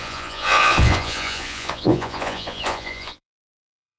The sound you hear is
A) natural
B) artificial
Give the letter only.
B